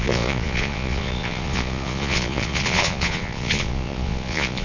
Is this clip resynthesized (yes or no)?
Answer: yes